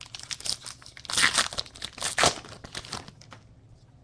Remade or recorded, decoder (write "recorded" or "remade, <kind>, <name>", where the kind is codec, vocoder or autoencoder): recorded